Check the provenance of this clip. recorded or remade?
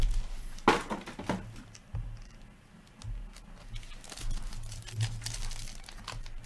recorded